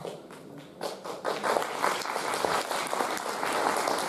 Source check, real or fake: real